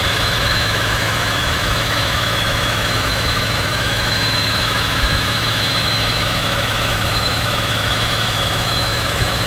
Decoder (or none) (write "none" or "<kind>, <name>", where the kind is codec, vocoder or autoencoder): autoencoder, DAC-VAE